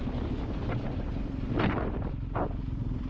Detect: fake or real fake